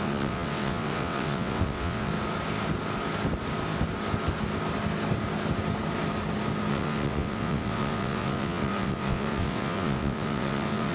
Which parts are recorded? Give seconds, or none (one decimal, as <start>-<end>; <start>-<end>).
2.1-6.7